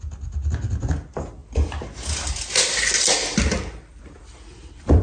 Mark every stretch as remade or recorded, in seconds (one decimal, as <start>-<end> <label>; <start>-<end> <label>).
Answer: 0.0-3.2 recorded; 3.2-5.0 remade